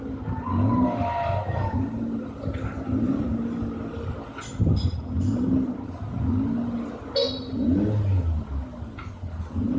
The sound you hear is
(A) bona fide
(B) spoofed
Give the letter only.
A